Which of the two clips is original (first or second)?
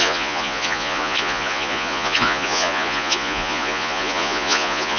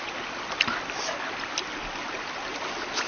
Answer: second